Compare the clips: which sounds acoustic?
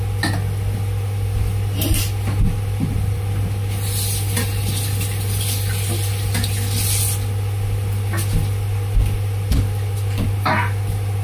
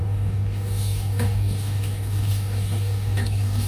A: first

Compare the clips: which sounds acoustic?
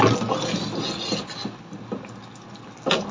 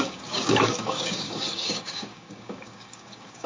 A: first